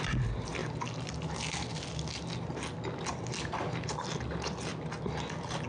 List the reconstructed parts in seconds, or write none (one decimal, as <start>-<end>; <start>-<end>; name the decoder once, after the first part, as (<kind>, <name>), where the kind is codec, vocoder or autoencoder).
none